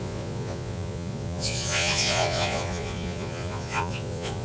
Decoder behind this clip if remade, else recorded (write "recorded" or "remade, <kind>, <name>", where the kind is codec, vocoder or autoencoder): remade, vocoder, Vocos